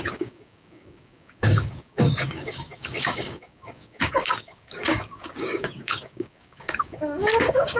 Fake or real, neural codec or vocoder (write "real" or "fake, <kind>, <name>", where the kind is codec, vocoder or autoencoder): fake, codec, DAC